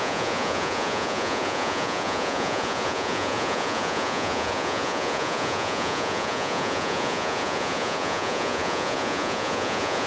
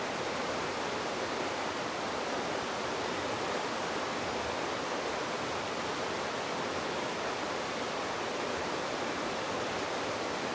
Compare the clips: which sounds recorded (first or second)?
second